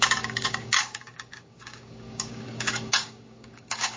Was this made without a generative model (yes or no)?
no